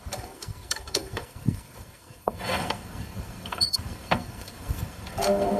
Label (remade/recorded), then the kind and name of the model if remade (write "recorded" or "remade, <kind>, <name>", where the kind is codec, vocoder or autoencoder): remade, codec, SNAC